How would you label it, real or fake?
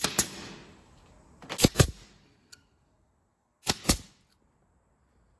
real